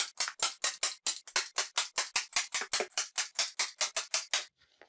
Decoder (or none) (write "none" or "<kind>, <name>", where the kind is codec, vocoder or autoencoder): none